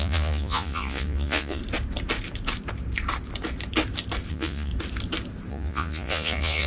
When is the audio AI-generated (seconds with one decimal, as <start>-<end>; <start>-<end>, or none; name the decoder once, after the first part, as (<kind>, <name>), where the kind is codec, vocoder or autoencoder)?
0.0-1.6 (vocoder, Vocos); 4.3-4.7; 5.5-6.7